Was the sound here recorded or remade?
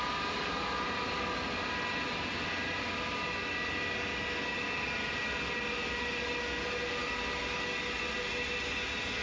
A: recorded